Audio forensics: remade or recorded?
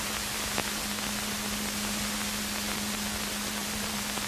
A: recorded